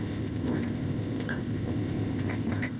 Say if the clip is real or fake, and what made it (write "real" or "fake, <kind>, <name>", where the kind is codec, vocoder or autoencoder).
fake, codec, ZipCodec